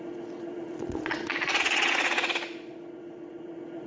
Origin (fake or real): fake